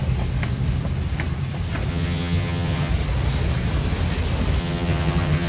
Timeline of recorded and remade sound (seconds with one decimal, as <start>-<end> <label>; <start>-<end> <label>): 0.0-1.9 recorded; 1.9-2.9 remade; 2.9-4.6 recorded; 4.6-5.5 remade